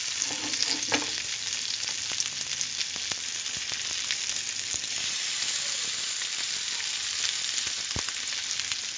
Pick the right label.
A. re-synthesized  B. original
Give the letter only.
B